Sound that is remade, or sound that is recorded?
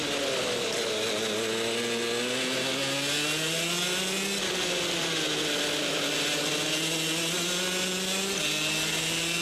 recorded